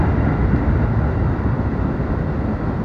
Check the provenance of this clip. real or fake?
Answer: real